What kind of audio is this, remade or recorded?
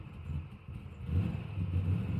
recorded